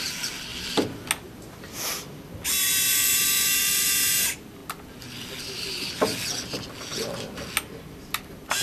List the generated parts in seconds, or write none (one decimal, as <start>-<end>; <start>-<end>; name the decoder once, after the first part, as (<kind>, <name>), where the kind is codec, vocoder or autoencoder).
none